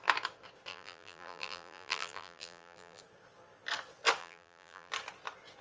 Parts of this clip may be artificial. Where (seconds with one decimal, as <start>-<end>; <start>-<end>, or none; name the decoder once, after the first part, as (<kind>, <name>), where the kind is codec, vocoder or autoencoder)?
0.7-3.0 (vocoder, BigVGAN v2); 4.2-4.9